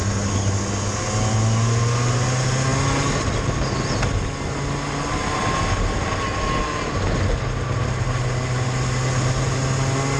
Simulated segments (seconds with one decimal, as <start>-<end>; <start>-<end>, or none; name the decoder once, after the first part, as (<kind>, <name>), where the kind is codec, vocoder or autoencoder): none